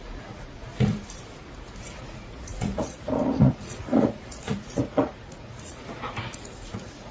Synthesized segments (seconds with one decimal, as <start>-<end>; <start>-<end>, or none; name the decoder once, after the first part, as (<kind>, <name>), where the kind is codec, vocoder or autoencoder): 0.0-0.7 (vocoder, Vocos); 2.0-7.1